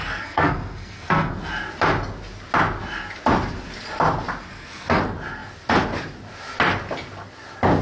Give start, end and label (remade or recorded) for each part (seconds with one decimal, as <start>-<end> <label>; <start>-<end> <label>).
0.0-1.3 remade; 1.3-4.4 recorded; 4.4-5.0 remade; 5.0-7.8 recorded